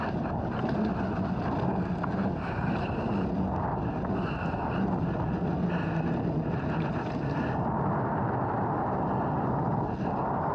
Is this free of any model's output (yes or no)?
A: yes